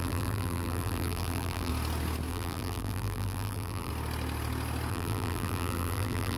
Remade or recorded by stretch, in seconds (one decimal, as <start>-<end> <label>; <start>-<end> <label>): 0.0-1.7 remade; 1.7-2.3 recorded; 2.3-3.9 remade; 3.9-4.9 recorded; 4.9-6.4 remade